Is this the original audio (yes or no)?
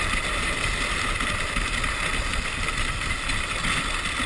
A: yes